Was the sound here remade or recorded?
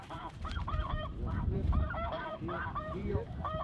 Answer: remade